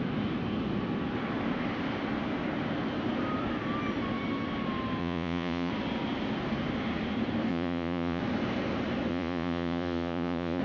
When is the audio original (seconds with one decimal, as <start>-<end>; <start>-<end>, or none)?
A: 0.0-5.0; 5.7-7.5; 8.2-9.1